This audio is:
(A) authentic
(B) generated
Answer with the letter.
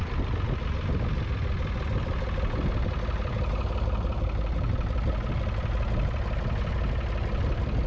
A